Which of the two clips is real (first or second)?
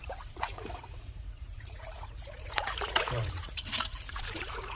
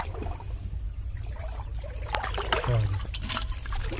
second